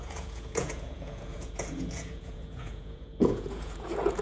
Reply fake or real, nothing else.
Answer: fake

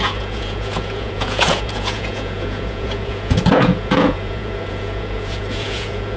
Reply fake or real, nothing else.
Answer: fake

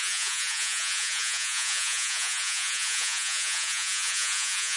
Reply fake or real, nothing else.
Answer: fake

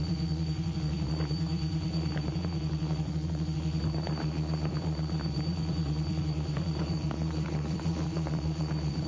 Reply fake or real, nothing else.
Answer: fake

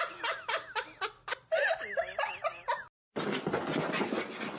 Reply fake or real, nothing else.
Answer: real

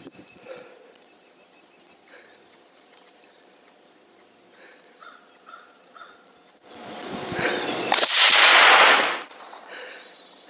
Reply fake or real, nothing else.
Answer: fake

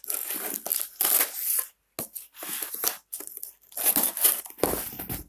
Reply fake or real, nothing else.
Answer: real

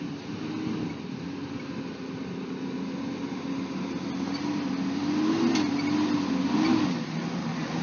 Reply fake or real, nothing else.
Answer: real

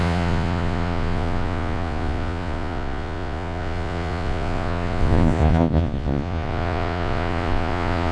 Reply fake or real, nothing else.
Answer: fake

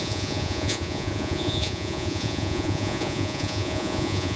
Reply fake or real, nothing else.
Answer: fake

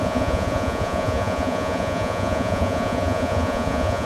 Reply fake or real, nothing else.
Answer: fake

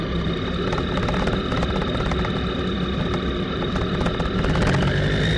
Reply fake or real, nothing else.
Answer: real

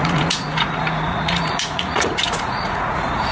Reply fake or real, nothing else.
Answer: fake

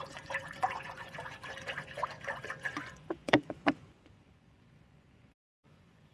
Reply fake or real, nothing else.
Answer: fake